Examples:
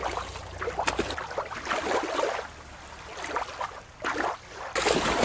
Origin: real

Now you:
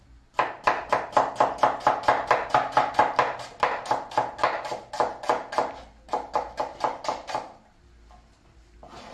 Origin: real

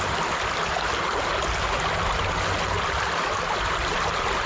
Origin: real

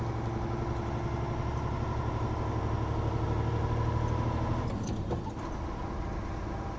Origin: real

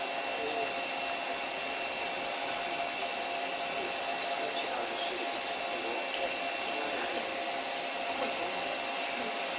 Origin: real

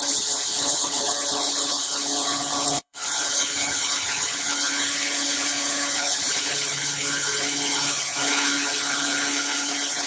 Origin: fake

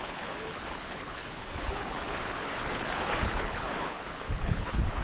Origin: fake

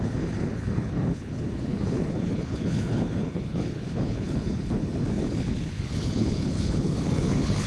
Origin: fake